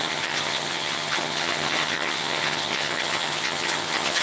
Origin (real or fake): fake